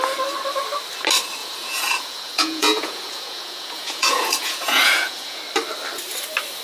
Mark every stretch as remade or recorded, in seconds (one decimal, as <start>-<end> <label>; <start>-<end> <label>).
0.0-1.4 recorded; 1.4-5.4 remade; 5.4-6.6 recorded